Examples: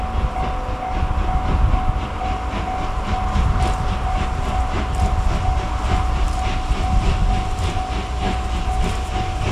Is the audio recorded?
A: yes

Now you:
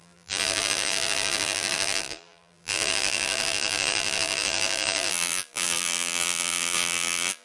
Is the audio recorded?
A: no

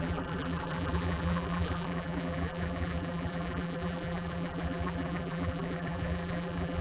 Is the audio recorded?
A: no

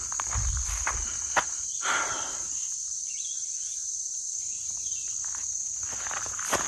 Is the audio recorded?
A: yes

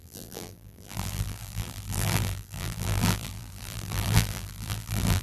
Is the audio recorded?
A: no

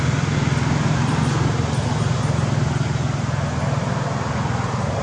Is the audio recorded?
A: yes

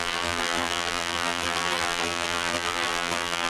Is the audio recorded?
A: no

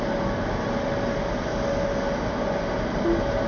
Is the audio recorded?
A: yes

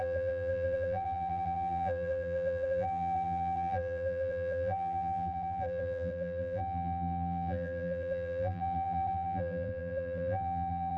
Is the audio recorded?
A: no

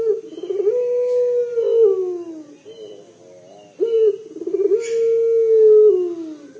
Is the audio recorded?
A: yes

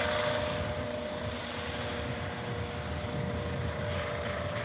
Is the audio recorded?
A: yes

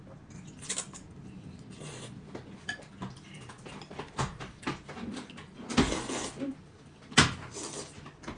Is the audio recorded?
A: yes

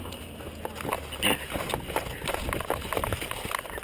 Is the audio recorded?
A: yes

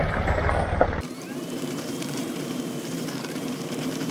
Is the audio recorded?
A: no